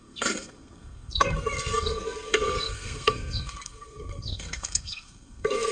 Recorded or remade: remade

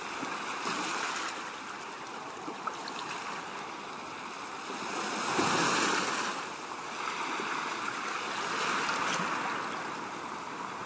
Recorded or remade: recorded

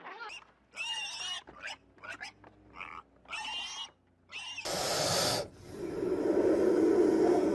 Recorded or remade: recorded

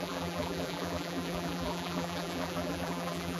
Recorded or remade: remade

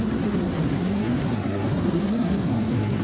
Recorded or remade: remade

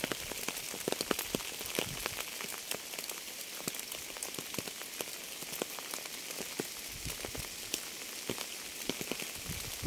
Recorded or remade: recorded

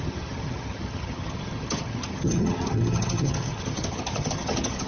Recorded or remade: remade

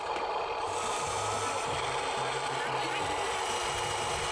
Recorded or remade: recorded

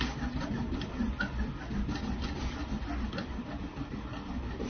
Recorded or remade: recorded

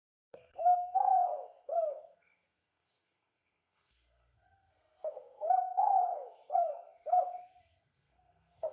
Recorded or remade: remade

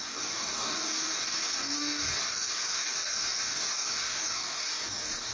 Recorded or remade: remade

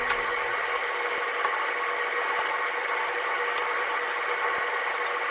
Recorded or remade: recorded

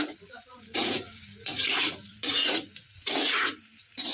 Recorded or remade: remade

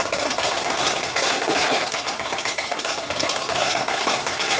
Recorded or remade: remade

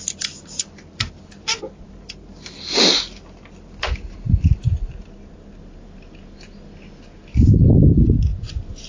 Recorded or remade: recorded